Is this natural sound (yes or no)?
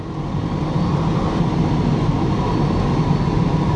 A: yes